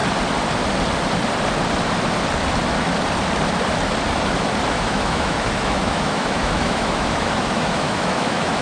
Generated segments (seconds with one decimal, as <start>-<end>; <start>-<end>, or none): 4.7-8.6